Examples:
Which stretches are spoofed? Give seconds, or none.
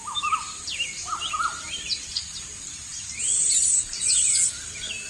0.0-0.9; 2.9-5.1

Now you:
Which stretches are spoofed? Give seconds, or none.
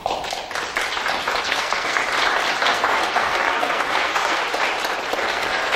1.4-2.0; 2.6-4.4; 5.2-5.8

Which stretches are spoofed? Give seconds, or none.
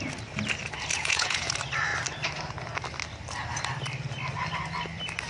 0.9-1.5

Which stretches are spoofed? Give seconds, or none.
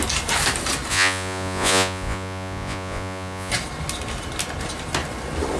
0.9-3.5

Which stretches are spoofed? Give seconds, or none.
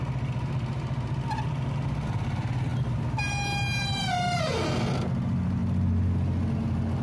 none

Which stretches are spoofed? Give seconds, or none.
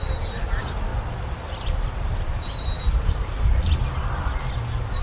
0.0-0.9; 2.9-3.8